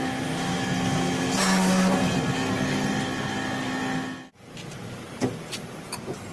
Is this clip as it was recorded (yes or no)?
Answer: yes